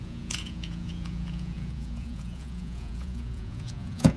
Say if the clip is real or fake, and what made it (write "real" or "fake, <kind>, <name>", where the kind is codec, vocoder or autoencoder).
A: fake, vocoder, Vocos